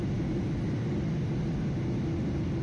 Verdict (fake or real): real